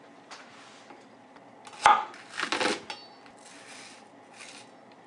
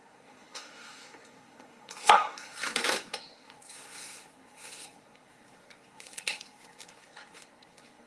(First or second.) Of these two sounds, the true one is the first